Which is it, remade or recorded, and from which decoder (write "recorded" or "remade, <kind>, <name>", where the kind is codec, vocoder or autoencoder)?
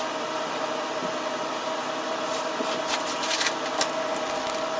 recorded